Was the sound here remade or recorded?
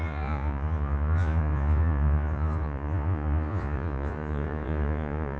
remade